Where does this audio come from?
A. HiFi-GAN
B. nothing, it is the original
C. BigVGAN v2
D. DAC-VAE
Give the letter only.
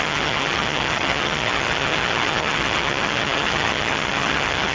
A